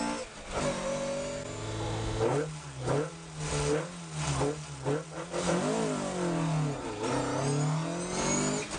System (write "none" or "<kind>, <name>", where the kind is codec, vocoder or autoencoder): none